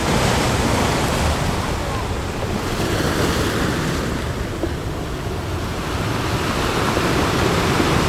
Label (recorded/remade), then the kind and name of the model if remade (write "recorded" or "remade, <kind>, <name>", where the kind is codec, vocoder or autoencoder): recorded